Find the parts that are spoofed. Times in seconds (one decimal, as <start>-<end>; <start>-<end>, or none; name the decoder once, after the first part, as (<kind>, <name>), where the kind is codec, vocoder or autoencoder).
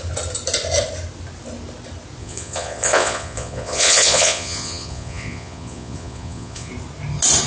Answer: 2.2-6.7 (vocoder, Vocos)